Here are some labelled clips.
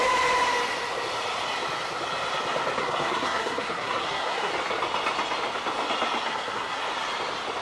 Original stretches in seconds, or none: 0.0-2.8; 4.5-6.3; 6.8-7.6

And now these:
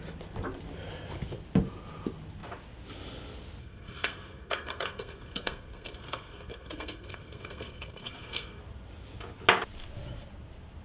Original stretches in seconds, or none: 0.0-3.6; 8.6-10.8

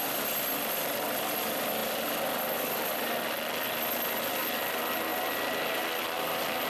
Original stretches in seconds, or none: 0.0-6.7

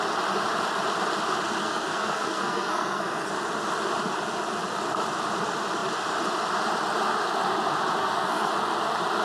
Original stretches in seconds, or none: 0.0-1.6; 3.3-8.0; 8.5-9.2

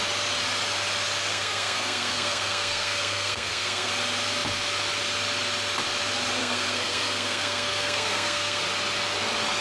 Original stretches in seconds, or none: 0.0-1.3; 3.9-6.4; 8.6-9.6